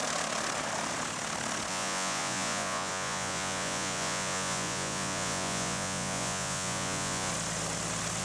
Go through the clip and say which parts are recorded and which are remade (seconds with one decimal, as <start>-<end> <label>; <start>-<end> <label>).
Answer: 0.0-1.7 recorded; 1.7-7.3 remade; 7.3-8.2 recorded